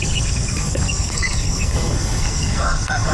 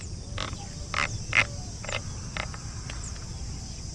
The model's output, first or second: first